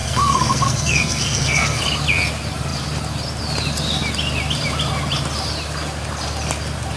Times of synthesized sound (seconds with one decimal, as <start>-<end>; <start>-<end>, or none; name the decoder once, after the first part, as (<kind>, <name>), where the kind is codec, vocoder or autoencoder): 0.0-1.8 (codec, SNAC)